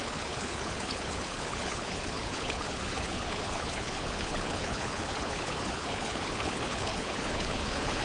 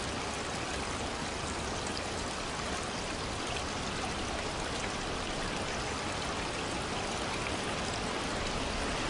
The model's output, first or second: first